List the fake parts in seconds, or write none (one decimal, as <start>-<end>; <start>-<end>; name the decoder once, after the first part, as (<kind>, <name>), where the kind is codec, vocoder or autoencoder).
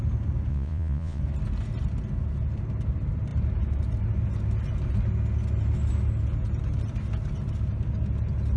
0.5-1.2 (vocoder, Vocos)